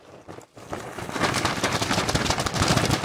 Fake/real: real